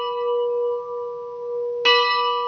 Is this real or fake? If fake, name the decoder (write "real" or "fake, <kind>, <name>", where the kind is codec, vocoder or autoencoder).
real